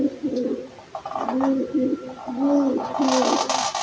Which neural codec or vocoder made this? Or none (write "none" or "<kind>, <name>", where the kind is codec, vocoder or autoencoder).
none